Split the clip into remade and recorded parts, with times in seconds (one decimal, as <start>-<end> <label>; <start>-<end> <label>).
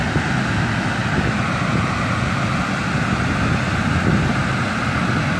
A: 0.0-5.4 recorded